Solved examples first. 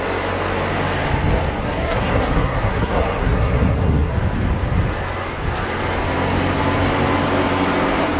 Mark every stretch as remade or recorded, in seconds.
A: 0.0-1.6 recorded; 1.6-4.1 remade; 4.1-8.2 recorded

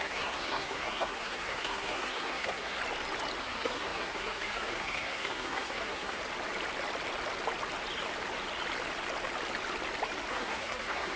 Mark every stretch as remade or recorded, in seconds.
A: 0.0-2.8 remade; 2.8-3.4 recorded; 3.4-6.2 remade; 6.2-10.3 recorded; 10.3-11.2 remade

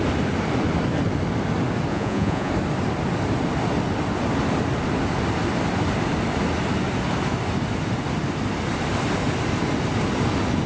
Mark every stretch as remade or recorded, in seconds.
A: 0.0-1.9 recorded; 1.9-2.5 remade; 2.5-10.7 recorded